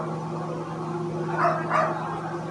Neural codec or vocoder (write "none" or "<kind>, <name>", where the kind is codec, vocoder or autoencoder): none